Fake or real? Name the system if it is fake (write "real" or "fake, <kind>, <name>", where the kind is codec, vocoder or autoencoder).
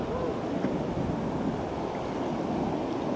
real